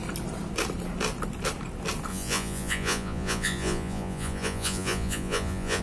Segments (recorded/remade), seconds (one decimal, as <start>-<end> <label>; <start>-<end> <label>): 0.0-2.1 recorded; 2.1-5.8 remade